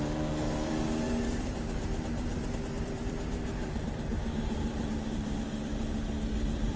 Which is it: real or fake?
fake